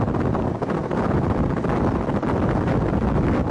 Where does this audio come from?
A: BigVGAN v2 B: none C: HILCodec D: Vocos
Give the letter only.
B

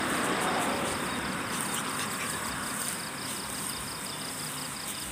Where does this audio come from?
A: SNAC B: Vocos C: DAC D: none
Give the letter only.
D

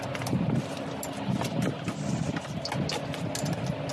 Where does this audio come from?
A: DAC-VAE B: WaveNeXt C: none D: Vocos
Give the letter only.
C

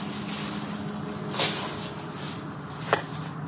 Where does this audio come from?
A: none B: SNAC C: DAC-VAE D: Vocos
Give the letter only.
A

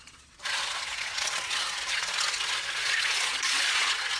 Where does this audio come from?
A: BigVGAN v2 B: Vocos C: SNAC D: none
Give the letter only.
B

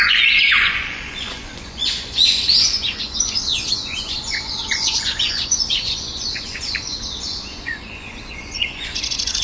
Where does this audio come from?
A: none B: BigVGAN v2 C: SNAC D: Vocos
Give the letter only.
D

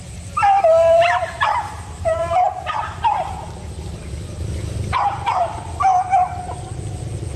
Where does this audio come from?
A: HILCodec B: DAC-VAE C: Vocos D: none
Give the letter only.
D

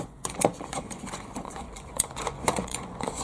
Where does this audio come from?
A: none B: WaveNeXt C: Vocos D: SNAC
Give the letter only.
C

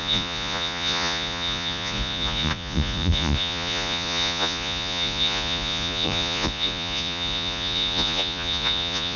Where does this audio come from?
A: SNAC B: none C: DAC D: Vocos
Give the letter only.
D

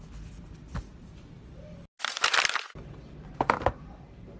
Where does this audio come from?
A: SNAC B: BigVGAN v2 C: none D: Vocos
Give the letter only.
C